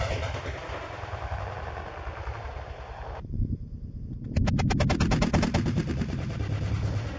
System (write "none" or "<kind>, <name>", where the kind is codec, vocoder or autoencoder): none